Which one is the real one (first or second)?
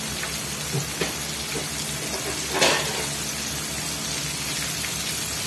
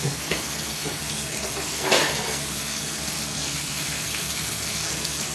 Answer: first